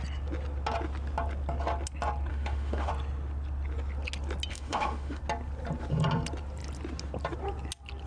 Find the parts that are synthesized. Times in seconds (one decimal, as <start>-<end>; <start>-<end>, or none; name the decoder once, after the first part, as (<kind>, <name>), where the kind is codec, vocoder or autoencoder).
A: 2.3-2.9 (autoencoder, DAC-VAE); 4.5-5.2